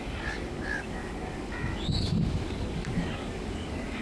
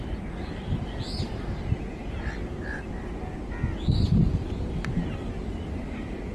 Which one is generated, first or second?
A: first